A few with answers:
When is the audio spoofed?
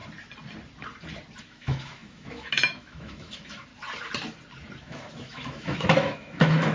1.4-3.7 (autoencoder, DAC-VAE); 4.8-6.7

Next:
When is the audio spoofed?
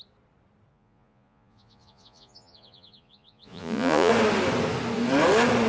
0.7-4.1 (vocoder, Vocos)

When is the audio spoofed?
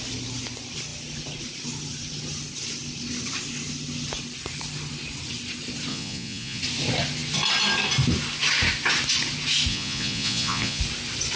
5.9-6.6 (vocoder, Vocos); 9.7-10.8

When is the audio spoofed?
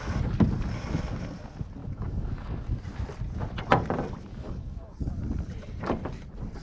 1.8-2.8 (codec, DAC); 4.3-5.1